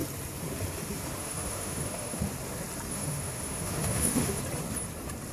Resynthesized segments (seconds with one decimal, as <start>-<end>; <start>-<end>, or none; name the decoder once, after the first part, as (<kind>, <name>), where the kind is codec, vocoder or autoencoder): 1.2-2.2 (autoencoder, DAC-VAE); 2.9-4.4